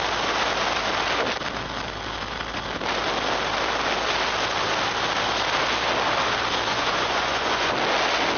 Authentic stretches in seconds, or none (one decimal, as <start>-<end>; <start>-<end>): 0.0-6.7; 7.7-8.4